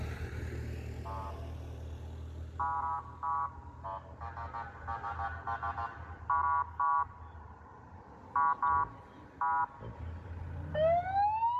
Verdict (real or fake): real